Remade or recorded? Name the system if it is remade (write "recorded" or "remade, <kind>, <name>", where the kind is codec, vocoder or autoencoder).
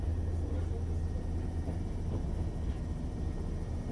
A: recorded